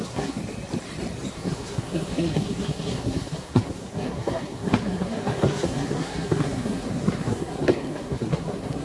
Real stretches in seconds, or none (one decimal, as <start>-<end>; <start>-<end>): 0.4-1.3